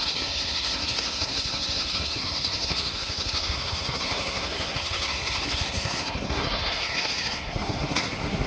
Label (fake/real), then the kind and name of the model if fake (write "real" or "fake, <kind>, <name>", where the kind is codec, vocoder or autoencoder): fake, codec, SNAC